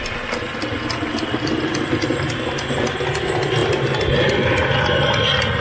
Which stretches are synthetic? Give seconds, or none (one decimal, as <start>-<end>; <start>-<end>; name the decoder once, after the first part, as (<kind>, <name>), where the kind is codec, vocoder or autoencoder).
none